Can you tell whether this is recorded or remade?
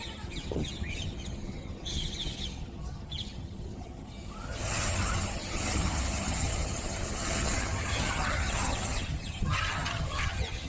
remade